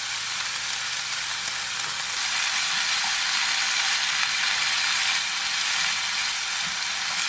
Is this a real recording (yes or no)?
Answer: yes